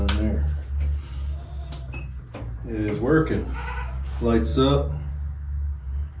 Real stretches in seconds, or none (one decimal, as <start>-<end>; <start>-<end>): 0.0-6.2